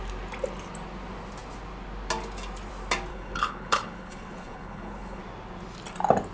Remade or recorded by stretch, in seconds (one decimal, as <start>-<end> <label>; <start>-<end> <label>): 0.0-3.1 recorded; 3.1-5.2 remade; 5.2-6.3 recorded